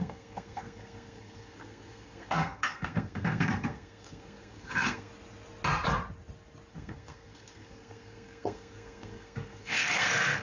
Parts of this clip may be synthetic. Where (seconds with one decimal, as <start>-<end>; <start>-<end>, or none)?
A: 0.0-5.1; 6.7-10.4